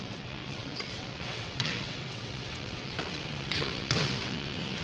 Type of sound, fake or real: fake